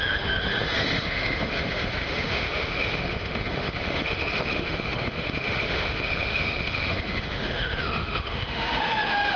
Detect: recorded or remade remade